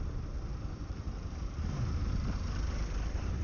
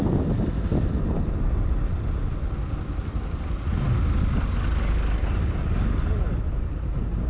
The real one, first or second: second